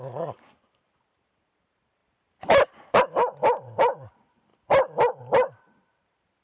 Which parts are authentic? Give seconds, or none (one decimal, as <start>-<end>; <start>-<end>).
4.5-5.2